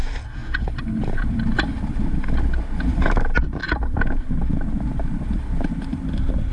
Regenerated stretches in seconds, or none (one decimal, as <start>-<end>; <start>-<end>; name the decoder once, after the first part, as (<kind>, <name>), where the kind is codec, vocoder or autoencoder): 0.0-2.1 (vocoder, BigVGAN v2); 2.9-3.6; 5.2-6.5